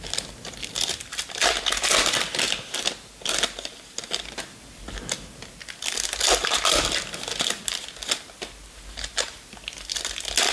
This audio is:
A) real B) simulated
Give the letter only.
A